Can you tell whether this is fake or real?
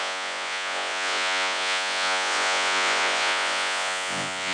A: fake